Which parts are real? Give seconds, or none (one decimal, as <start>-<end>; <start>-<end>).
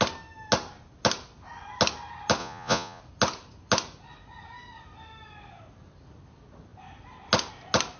0.0-2.4; 3.0-8.0